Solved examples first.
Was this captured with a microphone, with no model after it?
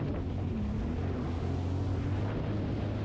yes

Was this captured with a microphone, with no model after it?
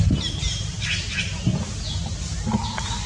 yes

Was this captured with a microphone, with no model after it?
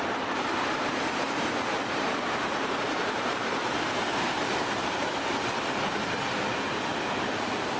no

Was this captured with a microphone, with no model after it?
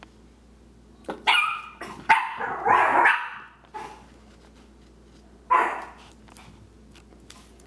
yes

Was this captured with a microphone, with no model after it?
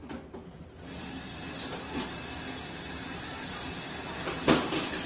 yes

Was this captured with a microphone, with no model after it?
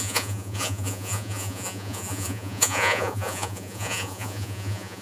no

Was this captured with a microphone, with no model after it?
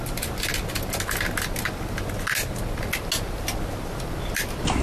yes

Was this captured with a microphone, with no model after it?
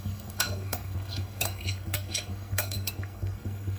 no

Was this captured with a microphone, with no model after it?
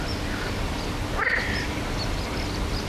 yes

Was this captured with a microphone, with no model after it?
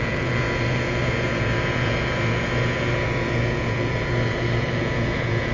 no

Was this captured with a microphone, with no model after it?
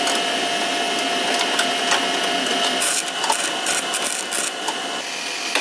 yes